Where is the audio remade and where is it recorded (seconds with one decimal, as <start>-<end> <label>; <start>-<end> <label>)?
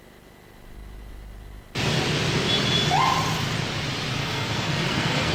0.0-4.2 recorded; 4.2-5.3 remade